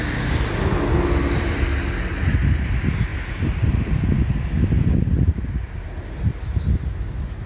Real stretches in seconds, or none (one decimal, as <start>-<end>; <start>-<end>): 0.0-7.5